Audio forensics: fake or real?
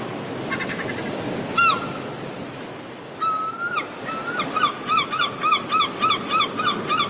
real